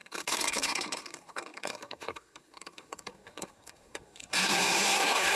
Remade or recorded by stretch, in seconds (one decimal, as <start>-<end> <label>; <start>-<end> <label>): 0.0-5.4 remade